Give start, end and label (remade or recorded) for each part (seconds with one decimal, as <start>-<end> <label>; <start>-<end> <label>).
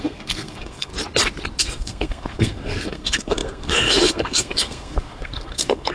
0.0-0.9 remade; 0.9-1.6 recorded; 1.6-5.9 remade